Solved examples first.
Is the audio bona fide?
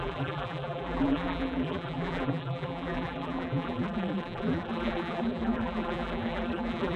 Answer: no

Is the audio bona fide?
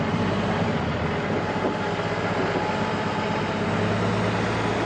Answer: yes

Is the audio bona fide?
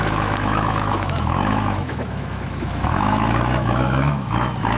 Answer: no